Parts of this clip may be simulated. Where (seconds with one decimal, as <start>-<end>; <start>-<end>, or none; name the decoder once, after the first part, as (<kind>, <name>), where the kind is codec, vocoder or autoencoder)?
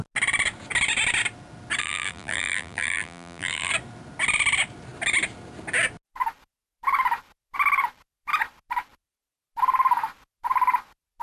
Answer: 1.8-3.7 (vocoder, BigVGAN v2)